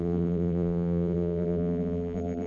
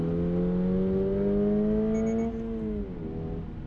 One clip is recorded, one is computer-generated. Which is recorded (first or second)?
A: second